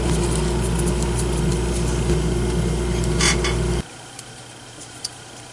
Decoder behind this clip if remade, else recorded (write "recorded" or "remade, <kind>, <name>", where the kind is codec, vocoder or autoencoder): recorded